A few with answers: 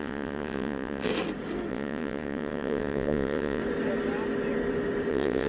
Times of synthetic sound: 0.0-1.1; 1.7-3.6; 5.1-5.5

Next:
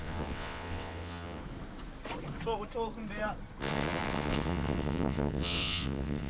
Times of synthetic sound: 0.0-1.4; 3.6-6.3

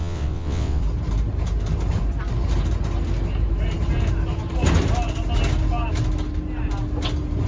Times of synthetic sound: 0.0-0.8